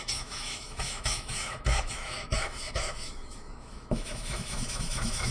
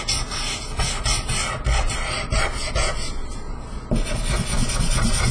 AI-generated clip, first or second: first